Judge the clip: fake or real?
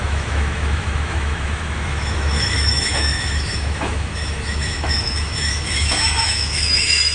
fake